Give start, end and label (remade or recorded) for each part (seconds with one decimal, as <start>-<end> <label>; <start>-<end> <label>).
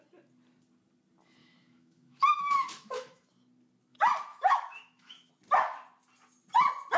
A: 0.0-1.4 recorded; 1.4-3.3 remade; 3.3-4.3 recorded; 4.3-5.3 remade; 5.3-7.0 recorded